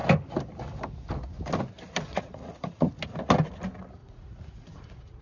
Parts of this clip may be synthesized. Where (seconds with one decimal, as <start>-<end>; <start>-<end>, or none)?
2.1-2.9; 4.0-5.2